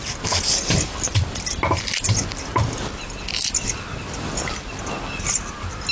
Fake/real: real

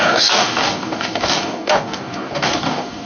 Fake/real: fake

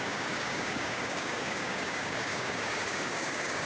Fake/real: fake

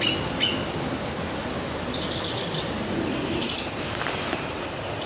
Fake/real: real